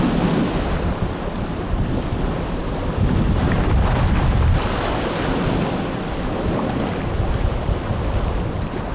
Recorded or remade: recorded